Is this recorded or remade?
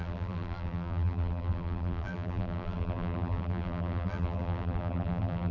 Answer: remade